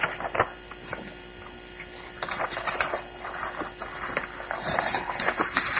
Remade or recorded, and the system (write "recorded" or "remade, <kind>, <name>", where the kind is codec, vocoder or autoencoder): recorded